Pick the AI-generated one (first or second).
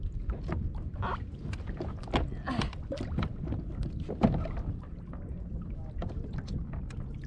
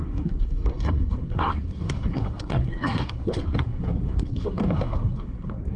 second